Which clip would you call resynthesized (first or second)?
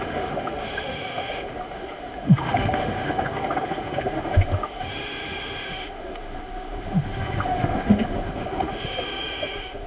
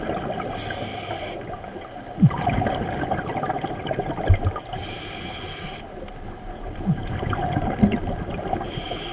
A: first